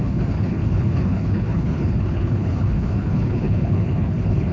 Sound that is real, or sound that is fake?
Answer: fake